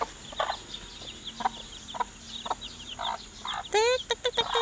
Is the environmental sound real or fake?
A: real